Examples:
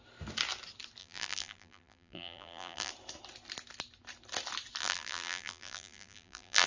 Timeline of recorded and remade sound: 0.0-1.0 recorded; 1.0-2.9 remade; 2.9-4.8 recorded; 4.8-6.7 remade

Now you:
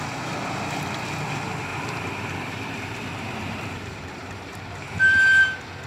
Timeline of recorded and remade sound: 0.0-1.7 recorded; 1.7-5.2 remade; 5.2-5.9 recorded

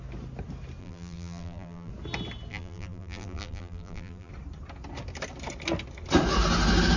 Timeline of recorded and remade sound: 0.0-0.8 recorded; 0.8-1.9 remade; 1.9-2.5 recorded; 2.5-4.3 remade; 4.3-7.0 recorded

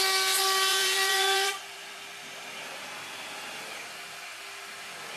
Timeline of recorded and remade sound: 0.0-0.7 recorded; 0.7-3.8 remade; 3.8-5.2 recorded

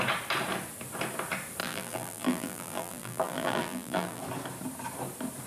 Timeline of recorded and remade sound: 0.0-1.6 recorded; 1.6-4.2 remade; 4.2-5.5 recorded

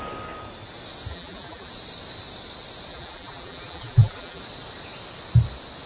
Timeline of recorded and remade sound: 0.0-1.1 recorded; 1.1-1.7 remade; 1.7-2.9 recorded; 2.9-4.4 remade; 4.4-5.9 recorded